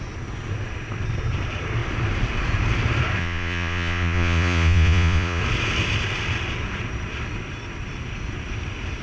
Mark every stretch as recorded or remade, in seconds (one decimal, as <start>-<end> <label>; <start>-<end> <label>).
0.0-3.2 recorded; 3.2-5.4 remade; 5.4-9.0 recorded